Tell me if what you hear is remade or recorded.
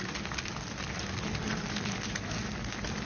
recorded